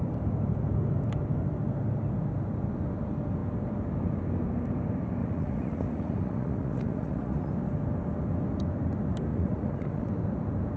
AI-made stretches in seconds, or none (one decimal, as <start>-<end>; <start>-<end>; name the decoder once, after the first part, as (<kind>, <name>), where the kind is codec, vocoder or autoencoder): 5.2-7.5 (vocoder, Vocos); 9.3-10.1